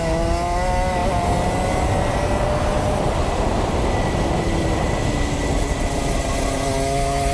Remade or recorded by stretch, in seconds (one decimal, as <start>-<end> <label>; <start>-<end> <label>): 0.0-7.3 recorded